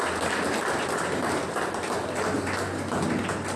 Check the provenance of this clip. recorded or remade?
recorded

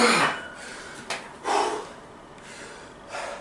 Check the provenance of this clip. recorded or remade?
recorded